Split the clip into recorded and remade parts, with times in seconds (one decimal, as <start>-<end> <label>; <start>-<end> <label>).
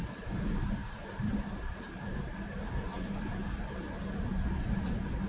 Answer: 0.0-5.3 remade